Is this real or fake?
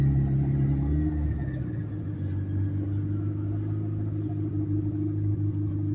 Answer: real